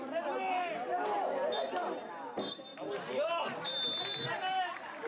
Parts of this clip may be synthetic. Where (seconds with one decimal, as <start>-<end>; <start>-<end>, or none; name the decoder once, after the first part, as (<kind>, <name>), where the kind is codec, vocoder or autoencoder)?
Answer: none